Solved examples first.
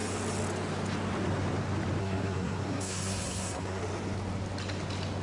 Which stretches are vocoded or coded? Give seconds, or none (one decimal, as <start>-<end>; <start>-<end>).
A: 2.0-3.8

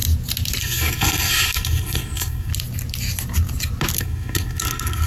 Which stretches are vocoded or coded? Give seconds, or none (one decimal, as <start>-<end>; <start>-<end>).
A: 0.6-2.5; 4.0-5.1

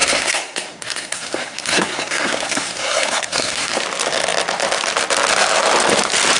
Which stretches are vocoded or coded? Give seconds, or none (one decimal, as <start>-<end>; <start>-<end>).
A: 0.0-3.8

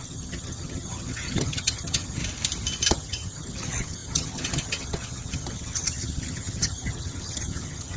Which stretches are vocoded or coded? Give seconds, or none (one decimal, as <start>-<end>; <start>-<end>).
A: 0.0-2.2; 2.9-8.0